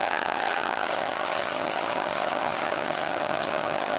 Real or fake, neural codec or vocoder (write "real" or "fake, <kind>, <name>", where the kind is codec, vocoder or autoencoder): fake, vocoder, HiFi-GAN